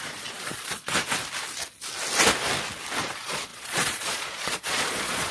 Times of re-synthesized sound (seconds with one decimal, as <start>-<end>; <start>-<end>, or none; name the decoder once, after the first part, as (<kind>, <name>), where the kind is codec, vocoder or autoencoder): 0.0-1.2 (vocoder, Vocos); 3.0-5.3